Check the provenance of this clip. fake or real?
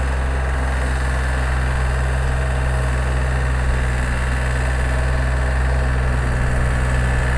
real